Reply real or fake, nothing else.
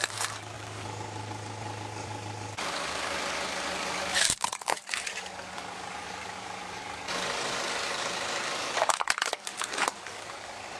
fake